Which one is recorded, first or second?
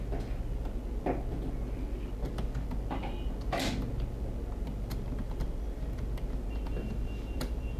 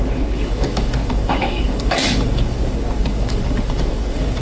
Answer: first